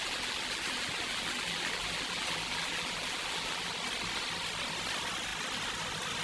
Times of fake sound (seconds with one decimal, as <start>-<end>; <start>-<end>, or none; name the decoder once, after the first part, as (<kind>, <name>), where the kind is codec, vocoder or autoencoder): 0.0-3.7 (vocoder, BigVGAN v2)